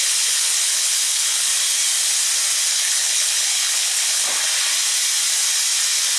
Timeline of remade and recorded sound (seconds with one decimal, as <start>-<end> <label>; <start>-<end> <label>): 0.0-1.5 remade; 1.5-2.7 recorded; 2.7-4.4 remade; 4.4-6.2 recorded